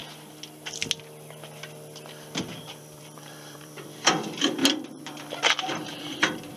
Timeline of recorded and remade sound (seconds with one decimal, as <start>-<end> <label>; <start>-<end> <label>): 0.0-2.7 recorded; 2.7-4.6 remade; 4.6-5.4 recorded; 5.4-6.6 remade